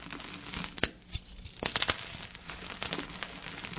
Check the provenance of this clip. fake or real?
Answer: real